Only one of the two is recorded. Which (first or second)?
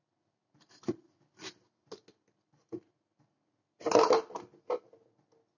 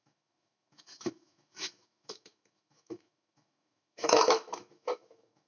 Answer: first